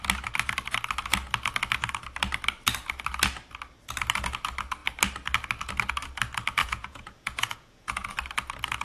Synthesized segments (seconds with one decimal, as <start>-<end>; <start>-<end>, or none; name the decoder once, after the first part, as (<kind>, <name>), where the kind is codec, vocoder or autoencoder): 6.6-8.1 (vocoder, Vocos)

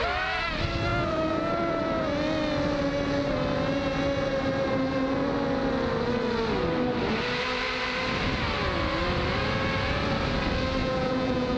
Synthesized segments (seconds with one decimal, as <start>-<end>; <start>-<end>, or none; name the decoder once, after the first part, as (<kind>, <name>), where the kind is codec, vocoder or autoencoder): 10.8-11.6 (vocoder, Vocos)

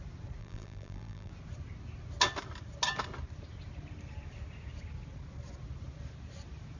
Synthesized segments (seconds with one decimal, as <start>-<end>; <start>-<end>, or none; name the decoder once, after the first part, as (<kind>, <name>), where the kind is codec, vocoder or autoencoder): 0.4-1.3 (vocoder, BigVGAN v2)

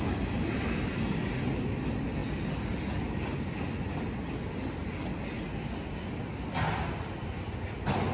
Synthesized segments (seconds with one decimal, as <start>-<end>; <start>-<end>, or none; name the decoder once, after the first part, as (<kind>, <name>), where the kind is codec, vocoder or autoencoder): none

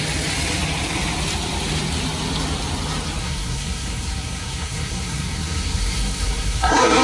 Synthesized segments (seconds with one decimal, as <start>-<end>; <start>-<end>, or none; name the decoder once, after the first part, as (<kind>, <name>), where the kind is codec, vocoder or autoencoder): 3.2-7.0 (codec, SNAC)

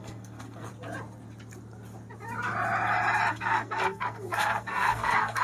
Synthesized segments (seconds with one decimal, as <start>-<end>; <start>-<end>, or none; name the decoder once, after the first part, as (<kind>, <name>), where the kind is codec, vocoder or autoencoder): 0.0-0.7 (codec, SNAC); 3.3-5.4

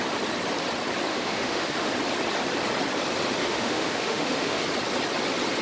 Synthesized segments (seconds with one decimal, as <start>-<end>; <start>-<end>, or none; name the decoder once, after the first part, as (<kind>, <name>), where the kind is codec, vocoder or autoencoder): 1.1-1.9 (autoencoder, DAC-VAE); 3.4-4.6

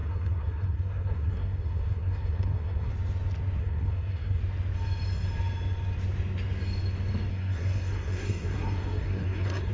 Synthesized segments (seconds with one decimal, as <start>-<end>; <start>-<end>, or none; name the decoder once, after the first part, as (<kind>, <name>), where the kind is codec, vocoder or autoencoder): 0.0-2.9 (codec, SNAC); 3.6-4.4; 7.3-9.7